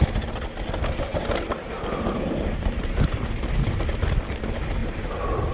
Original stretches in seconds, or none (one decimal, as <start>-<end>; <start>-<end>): 0.0-4.8